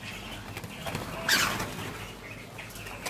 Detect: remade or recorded recorded